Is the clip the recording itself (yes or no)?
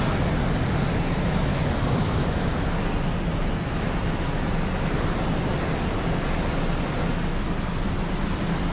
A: yes